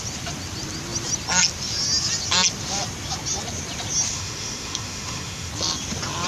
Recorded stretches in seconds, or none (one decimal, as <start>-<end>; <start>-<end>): 0.0-4.1; 5.5-6.3